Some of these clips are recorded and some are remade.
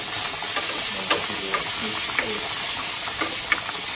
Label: recorded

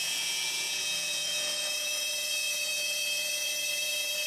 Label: remade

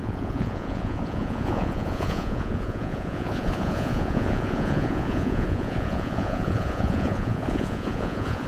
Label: remade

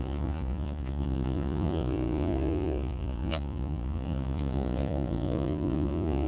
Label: remade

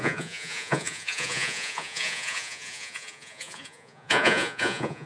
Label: remade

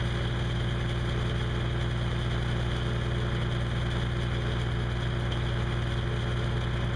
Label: recorded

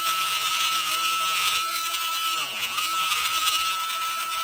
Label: remade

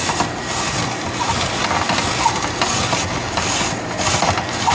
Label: recorded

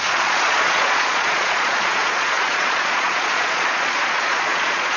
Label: remade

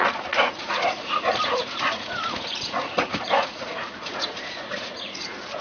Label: remade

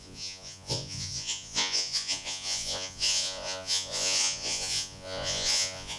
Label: remade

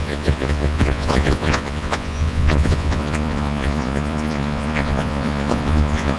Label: remade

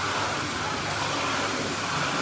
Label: recorded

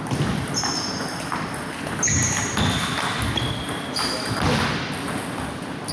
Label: recorded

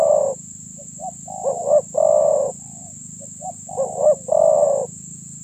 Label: recorded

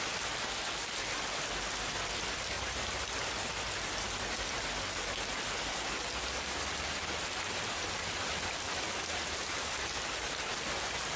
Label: recorded